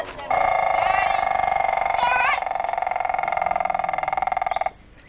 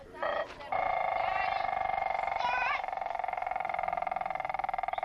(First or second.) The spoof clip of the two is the second